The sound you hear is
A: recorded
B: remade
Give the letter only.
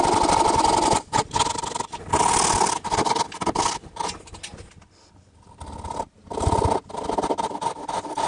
A